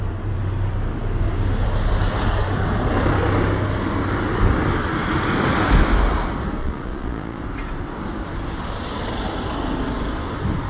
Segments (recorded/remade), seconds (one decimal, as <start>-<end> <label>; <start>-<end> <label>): 0.0-6.6 recorded; 6.6-7.4 remade; 7.4-10.7 recorded